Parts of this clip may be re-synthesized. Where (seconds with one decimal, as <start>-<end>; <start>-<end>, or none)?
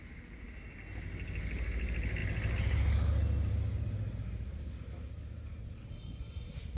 none